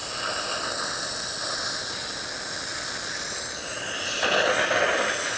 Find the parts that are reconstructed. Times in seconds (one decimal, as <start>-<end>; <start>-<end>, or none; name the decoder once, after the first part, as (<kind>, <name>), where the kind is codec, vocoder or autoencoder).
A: none